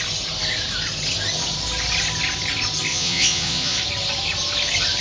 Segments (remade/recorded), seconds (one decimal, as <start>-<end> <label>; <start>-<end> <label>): 0.0-2.9 recorded; 2.9-3.8 remade; 3.8-5.0 recorded